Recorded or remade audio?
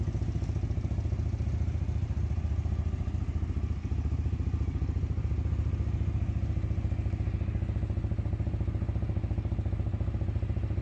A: recorded